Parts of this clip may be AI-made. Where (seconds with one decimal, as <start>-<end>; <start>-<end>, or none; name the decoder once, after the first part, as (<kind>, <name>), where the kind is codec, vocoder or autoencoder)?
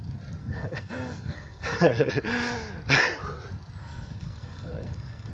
0.4-2.1 (codec, SNAC); 3.8-5.3